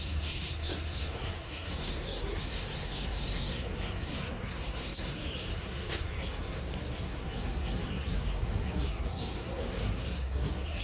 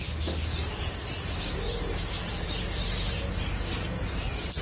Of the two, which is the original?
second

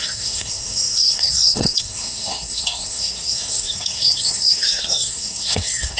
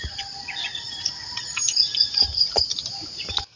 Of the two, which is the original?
second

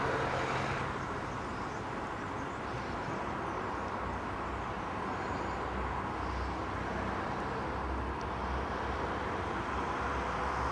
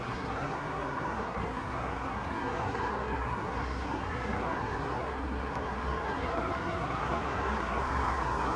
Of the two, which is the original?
first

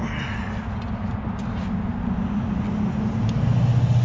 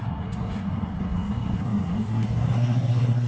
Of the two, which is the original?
first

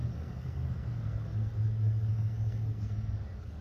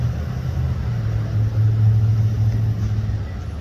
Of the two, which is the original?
second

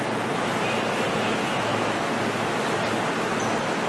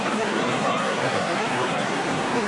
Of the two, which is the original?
first